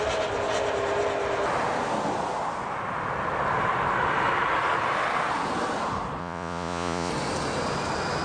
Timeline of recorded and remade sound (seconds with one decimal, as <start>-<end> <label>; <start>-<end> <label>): 0.0-6.2 recorded; 6.2-7.1 remade; 7.1-8.2 recorded